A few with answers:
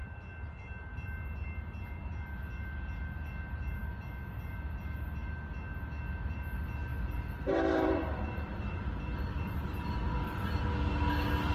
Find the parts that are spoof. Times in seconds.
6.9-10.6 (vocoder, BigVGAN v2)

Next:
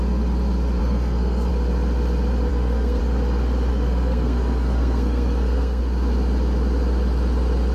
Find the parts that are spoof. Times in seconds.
0.8-1.5 (codec, SNAC); 2.5-3.0; 3.7-5.8

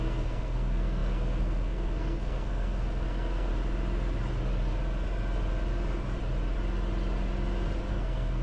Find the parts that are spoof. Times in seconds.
0.0-3.5 (codec, SNAC); 7.9-8.4

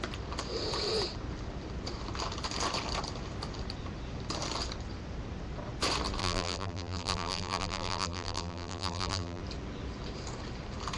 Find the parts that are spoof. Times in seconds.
6.2-9.4 (vocoder, BigVGAN v2)

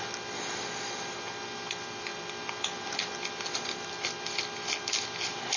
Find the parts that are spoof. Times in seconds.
none